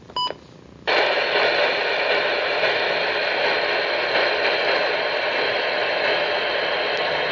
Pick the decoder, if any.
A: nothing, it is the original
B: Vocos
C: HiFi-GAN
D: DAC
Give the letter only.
A